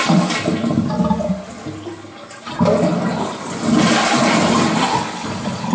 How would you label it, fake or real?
real